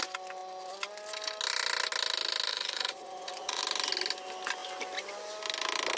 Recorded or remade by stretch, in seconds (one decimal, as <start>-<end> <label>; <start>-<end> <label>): 0.0-2.5 recorded; 2.5-3.6 remade; 3.6-6.0 recorded

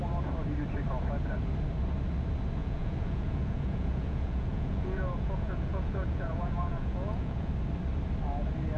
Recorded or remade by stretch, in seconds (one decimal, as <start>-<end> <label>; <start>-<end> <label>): 0.0-2.6 recorded; 2.6-7.5 remade; 7.5-8.8 recorded